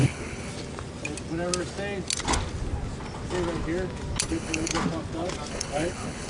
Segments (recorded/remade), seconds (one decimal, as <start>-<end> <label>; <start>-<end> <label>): 0.0-0.5 remade; 0.5-4.3 recorded; 4.3-4.7 remade; 4.7-5.5 recorded; 5.5-6.3 remade